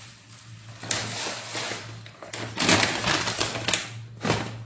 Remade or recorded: recorded